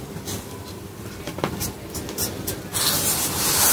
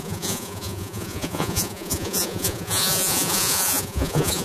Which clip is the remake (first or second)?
second